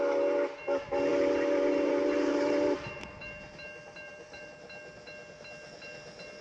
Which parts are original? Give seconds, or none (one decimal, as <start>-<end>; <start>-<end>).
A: 0.0-1.1; 4.5-6.4